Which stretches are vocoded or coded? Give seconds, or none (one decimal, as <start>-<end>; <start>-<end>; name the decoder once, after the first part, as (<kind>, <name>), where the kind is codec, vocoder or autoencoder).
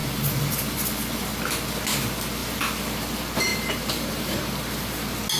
3.5-4.5 (vocoder, BigVGAN v2)